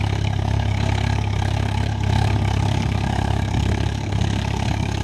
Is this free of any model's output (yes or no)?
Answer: no